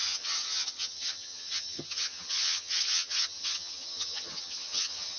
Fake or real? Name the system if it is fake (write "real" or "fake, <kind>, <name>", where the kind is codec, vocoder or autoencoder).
fake, vocoder, HiFi-GAN